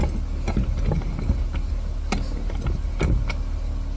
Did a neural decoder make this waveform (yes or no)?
no